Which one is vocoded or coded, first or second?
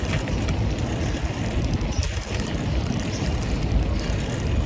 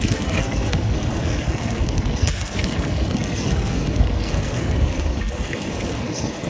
second